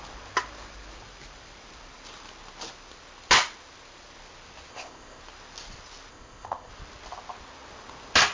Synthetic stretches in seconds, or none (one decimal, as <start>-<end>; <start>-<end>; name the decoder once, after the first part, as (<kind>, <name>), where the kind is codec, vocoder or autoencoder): 4.7-5.2 (codec, ZipCodec); 6.1-6.7